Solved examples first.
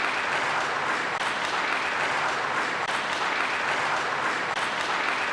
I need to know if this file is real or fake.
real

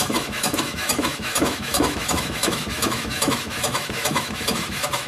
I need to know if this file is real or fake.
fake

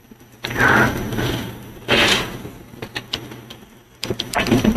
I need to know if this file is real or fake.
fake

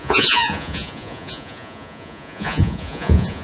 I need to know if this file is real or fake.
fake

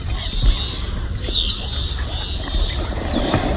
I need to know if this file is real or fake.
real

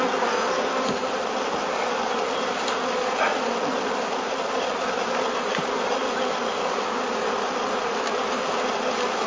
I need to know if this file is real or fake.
real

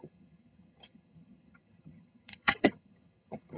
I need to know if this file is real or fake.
fake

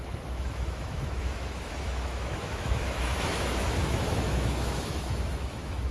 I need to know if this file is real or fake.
fake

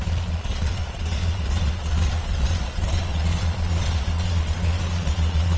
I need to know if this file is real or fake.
fake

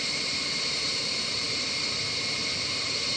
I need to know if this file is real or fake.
fake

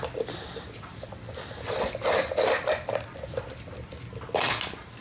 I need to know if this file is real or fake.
real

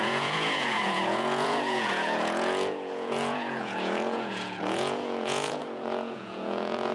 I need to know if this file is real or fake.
fake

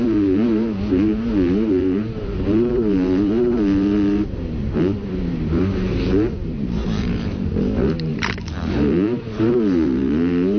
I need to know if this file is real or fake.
fake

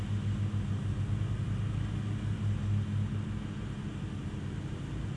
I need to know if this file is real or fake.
real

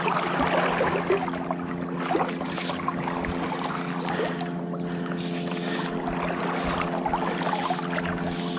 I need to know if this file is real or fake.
real